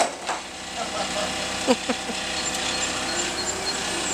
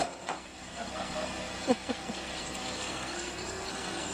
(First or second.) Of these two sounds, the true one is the first